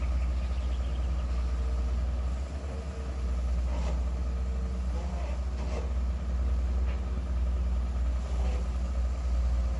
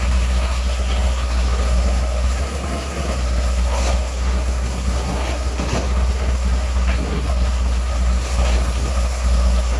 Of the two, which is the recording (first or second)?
first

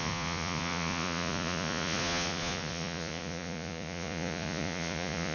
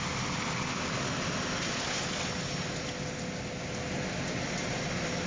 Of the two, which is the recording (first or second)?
second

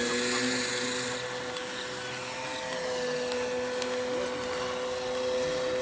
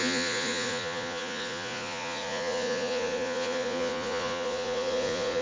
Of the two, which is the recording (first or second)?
first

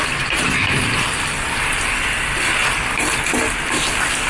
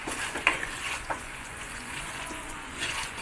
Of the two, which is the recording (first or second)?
first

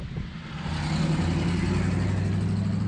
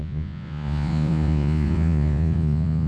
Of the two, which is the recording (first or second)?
first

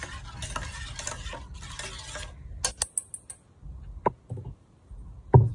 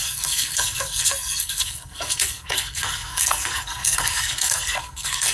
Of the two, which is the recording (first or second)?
first